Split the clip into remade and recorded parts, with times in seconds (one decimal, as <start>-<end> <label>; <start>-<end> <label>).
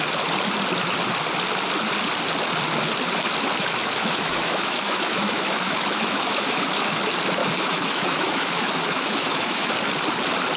0.0-3.8 recorded; 3.8-7.0 remade; 7.0-7.4 recorded; 7.4-9.7 remade; 9.7-10.6 recorded